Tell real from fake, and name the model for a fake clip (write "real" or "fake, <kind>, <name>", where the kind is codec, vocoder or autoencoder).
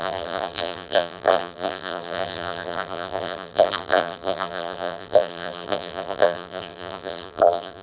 fake, vocoder, BigVGAN v2